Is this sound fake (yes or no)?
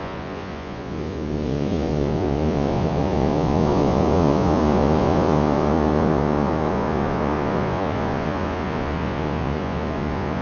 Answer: yes